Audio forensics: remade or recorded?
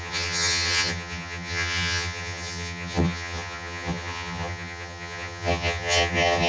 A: remade